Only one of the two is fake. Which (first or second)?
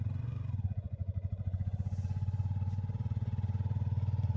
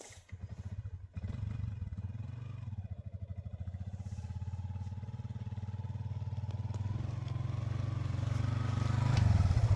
first